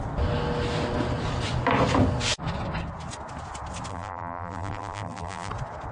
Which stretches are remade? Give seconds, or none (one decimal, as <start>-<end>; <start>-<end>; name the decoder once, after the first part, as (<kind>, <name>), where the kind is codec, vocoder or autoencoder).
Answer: 3.9-5.5 (vocoder, BigVGAN v2)